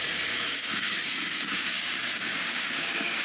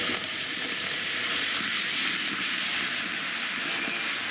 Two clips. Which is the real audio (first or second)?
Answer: second